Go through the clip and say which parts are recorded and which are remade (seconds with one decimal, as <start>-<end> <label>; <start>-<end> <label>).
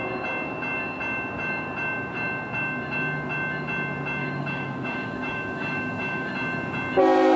0.0-4.2 recorded; 4.2-6.3 remade; 6.3-7.4 recorded